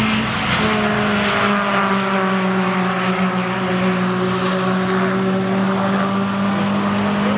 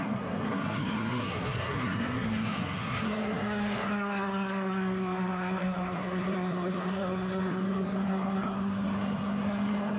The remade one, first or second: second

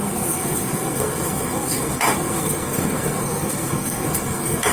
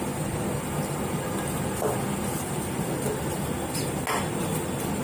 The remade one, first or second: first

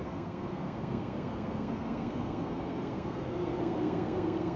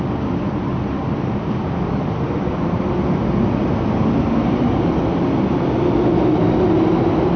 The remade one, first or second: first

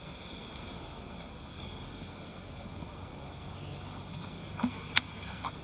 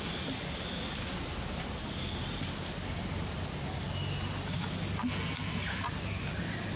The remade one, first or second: first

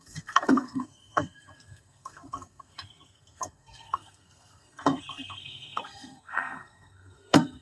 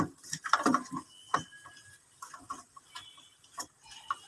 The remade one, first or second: first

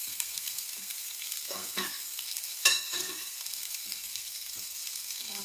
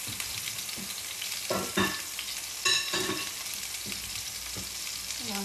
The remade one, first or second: first